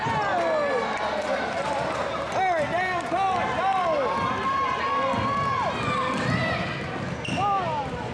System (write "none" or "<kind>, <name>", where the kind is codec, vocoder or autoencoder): none